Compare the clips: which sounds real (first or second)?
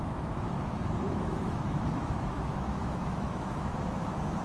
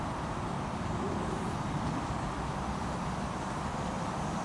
second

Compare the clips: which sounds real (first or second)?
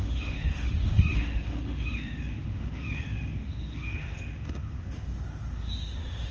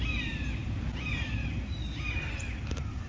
second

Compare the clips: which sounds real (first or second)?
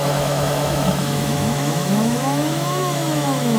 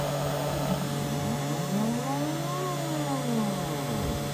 second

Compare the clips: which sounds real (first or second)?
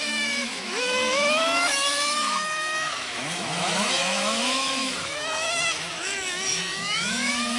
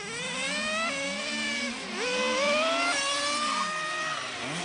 second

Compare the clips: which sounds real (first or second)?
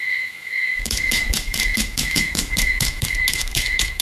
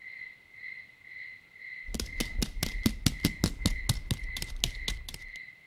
second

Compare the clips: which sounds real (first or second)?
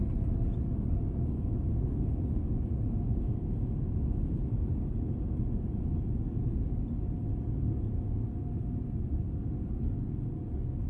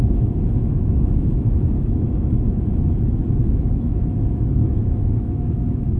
first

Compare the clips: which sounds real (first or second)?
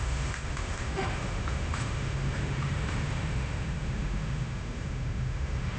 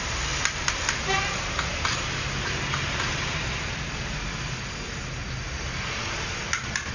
second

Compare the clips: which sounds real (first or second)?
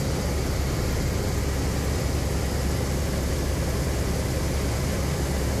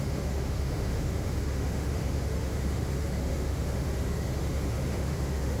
first